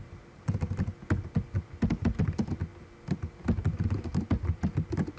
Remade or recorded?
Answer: recorded